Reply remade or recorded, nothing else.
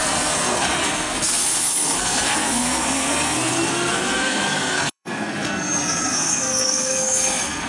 remade